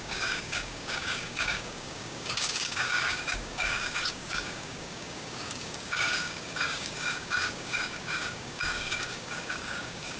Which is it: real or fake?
fake